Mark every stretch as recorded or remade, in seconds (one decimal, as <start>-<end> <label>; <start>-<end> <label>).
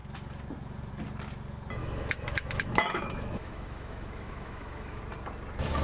0.0-1.8 recorded; 1.8-5.0 remade; 5.0-5.8 recorded